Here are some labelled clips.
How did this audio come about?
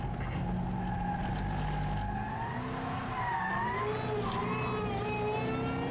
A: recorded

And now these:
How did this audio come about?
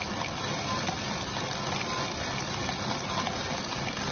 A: recorded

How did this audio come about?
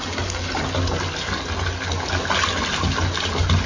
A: recorded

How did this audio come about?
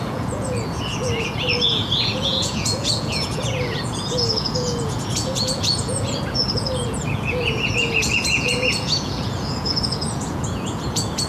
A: remade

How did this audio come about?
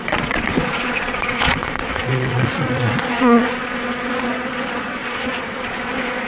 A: remade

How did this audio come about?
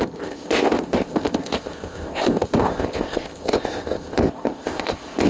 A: remade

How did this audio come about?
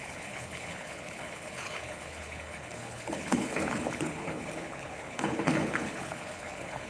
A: remade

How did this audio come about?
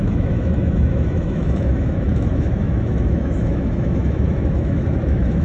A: remade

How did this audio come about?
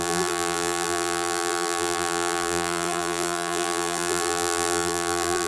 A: remade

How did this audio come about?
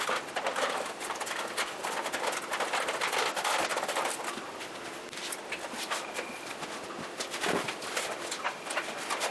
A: recorded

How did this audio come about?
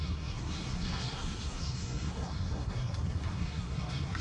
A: remade